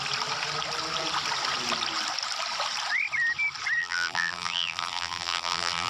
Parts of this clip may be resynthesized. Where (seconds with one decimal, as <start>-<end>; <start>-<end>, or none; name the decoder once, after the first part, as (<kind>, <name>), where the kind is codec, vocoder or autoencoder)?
3.8-5.9 (vocoder, BigVGAN v2)